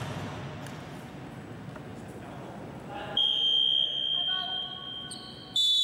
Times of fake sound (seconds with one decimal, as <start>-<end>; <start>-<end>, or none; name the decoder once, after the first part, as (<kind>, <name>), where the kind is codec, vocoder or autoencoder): none